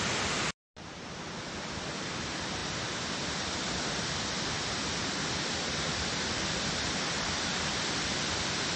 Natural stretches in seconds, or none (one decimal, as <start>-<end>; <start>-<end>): 0.0-8.8